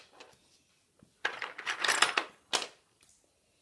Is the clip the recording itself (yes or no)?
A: yes